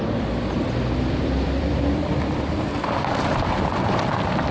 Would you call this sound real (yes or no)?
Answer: no